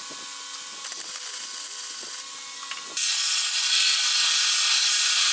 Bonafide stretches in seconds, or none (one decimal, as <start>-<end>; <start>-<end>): 0.0-5.3